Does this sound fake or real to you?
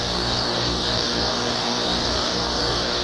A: fake